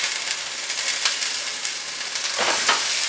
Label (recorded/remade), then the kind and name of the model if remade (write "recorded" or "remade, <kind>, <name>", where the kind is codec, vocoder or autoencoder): recorded